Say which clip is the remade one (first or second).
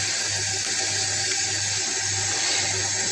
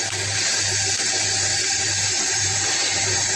second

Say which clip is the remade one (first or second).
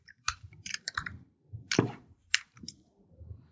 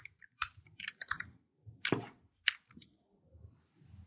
first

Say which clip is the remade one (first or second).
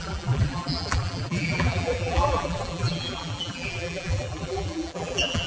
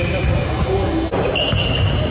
first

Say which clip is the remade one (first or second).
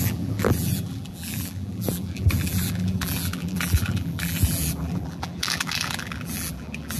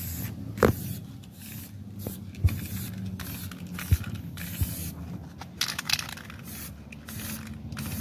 first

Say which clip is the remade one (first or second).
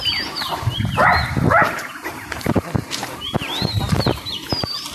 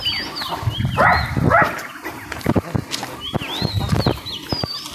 first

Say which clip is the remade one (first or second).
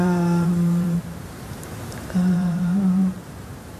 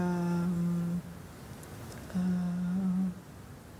first